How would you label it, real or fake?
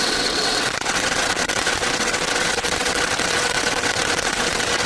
fake